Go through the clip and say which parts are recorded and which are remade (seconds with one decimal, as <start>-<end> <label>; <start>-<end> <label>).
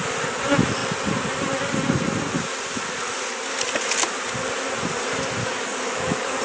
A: 0.0-5.4 recorded; 5.4-6.4 remade